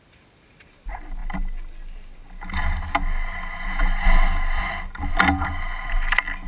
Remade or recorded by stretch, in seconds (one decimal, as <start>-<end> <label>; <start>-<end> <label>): 0.0-6.5 recorded